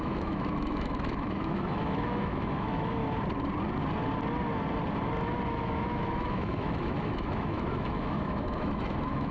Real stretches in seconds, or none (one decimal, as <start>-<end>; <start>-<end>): 3.0-5.6